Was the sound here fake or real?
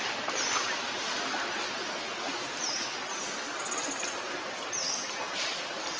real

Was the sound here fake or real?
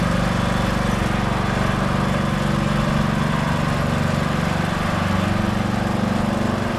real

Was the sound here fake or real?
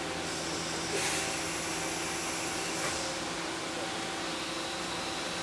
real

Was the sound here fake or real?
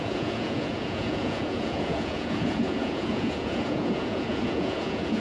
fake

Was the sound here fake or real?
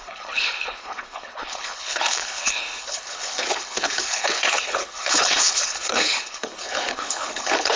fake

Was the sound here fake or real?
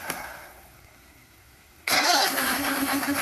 fake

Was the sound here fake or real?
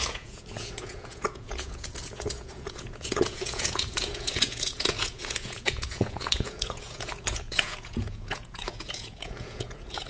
fake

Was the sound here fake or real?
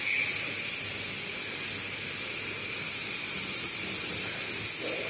real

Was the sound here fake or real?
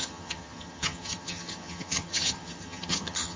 fake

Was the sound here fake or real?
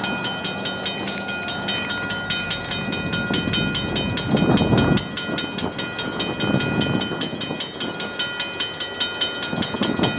real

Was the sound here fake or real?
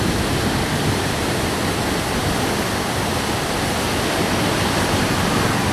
real